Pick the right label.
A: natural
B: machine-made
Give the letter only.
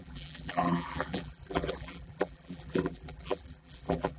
B